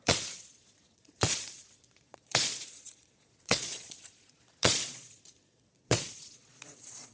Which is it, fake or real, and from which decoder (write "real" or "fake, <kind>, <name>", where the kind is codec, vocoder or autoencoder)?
fake, vocoder, Vocos